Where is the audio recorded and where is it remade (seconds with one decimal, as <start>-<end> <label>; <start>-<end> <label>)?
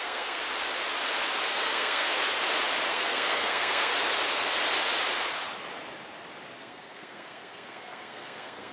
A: 0.0-0.4 remade; 0.4-1.5 recorded; 1.5-2.1 remade; 2.1-2.9 recorded; 2.9-3.9 remade; 3.9-6.6 recorded; 6.6-8.7 remade